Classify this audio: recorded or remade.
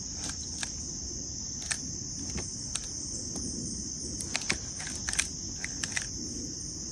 recorded